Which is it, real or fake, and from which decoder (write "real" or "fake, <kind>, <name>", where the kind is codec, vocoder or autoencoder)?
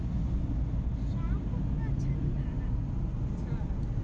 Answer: real